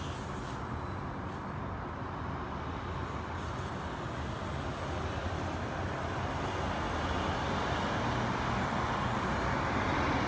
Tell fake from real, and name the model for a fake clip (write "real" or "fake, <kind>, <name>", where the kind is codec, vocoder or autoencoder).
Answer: real